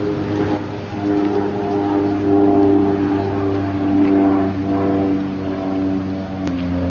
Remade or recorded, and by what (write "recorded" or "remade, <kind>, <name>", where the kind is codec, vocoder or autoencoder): recorded